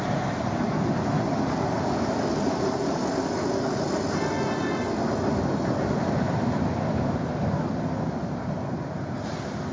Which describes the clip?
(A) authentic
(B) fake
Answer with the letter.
A